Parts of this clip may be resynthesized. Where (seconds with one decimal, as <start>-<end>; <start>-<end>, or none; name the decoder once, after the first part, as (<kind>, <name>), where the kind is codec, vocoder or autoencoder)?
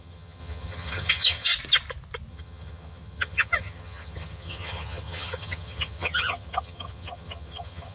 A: 0.0-1.5 (vocoder, HiFi-GAN); 2.3-7.9